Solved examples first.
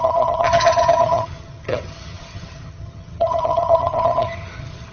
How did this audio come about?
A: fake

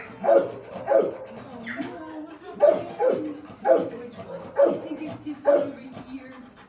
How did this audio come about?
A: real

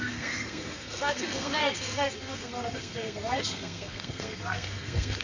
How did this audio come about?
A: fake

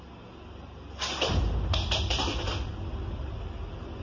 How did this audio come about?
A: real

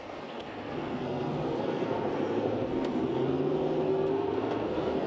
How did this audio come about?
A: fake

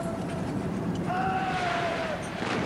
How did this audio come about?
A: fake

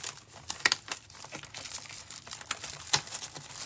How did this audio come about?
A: real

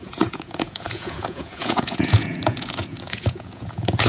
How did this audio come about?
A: fake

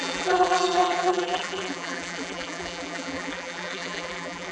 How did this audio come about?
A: fake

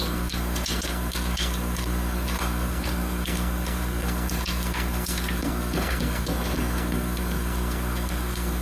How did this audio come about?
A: fake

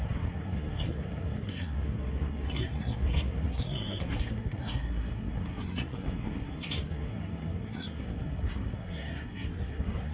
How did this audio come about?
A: fake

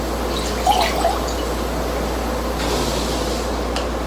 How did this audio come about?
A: real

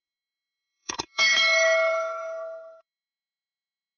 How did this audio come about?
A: fake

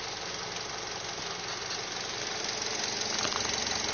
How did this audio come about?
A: real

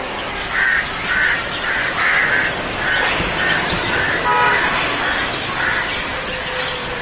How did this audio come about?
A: real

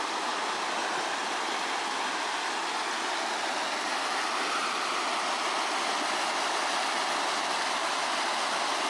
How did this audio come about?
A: real